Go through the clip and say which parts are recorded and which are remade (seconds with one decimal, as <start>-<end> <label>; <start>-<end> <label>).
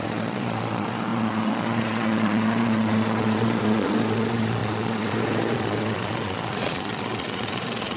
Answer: 0.0-8.0 remade